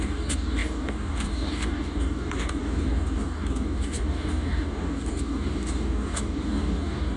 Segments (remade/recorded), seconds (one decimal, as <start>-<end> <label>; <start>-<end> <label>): 0.0-7.2 remade